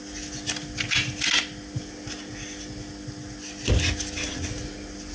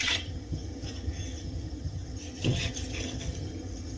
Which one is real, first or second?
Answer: first